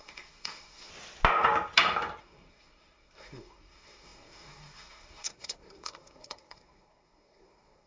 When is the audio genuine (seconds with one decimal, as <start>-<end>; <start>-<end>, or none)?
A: 0.9-2.2